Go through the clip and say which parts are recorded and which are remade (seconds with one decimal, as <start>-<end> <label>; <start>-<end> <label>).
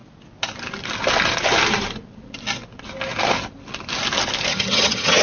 0.0-4.5 recorded; 4.5-5.2 remade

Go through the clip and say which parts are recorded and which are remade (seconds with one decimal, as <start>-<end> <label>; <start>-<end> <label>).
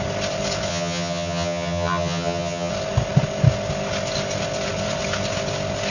0.0-0.7 recorded; 0.7-2.7 remade; 2.7-5.9 recorded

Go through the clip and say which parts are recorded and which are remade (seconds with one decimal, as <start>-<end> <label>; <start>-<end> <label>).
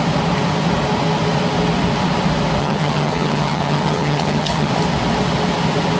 0.0-2.6 recorded; 2.6-4.7 remade; 4.7-6.0 recorded